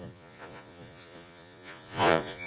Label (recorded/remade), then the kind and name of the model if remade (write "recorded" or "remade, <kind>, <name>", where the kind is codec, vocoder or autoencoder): remade, vocoder, Vocos